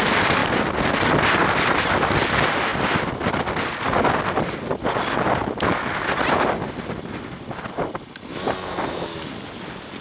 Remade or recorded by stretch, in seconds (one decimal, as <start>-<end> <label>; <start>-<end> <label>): 0.0-10.0 recorded